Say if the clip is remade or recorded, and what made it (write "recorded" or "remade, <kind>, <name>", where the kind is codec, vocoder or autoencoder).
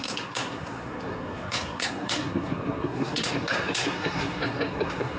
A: remade, codec, SNAC